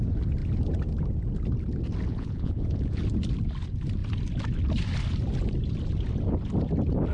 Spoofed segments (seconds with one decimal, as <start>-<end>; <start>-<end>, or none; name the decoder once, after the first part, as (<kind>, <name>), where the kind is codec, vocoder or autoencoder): 2.1-3.0 (vocoder, Vocos)